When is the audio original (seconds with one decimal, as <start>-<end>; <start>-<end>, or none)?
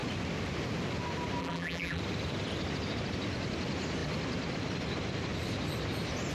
0.0-1.4; 2.0-6.3